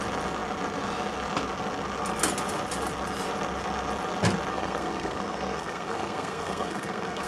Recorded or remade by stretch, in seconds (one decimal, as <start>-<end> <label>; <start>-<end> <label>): 0.0-4.5 recorded; 4.5-7.3 remade